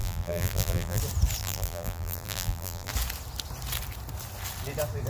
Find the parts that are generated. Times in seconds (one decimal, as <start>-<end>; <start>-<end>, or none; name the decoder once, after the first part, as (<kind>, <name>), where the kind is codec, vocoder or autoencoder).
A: 0.0-1.0 (vocoder, BigVGAN v2); 1.4-2.9